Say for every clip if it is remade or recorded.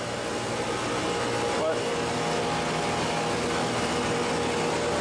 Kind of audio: recorded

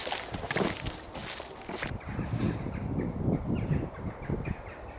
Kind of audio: recorded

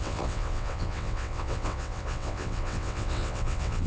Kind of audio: remade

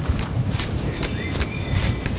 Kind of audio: recorded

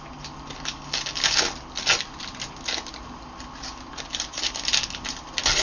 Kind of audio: recorded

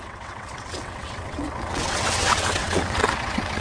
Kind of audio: remade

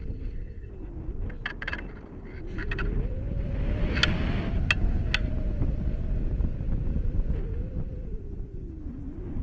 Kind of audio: recorded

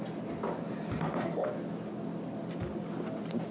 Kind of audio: recorded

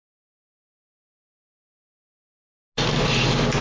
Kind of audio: recorded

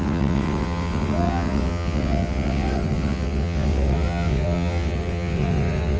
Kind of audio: remade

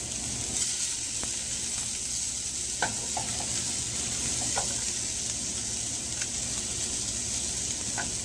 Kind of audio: recorded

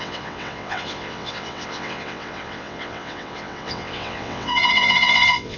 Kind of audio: remade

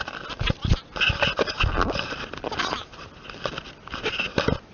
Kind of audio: recorded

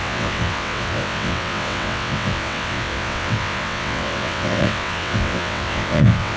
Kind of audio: remade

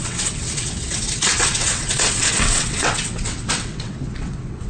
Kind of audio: remade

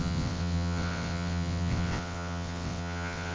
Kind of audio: remade